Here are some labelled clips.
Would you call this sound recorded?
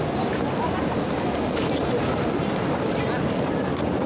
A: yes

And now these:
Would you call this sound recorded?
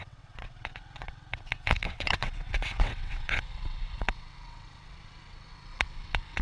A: no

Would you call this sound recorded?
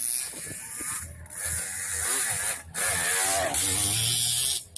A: yes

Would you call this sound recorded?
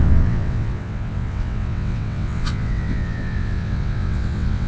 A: no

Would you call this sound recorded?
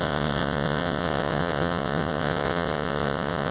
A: no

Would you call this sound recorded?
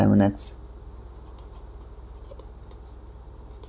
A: yes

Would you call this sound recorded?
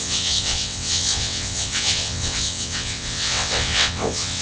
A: no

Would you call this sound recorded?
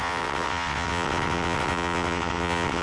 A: no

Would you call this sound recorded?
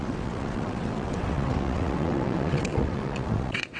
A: no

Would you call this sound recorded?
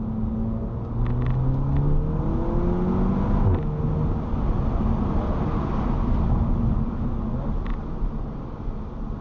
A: yes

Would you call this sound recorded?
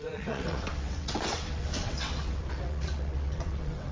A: no